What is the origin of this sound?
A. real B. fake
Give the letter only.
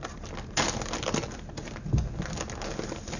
A